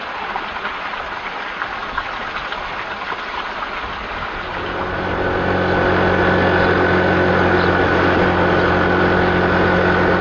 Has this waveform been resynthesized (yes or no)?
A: no